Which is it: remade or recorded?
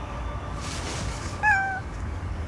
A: remade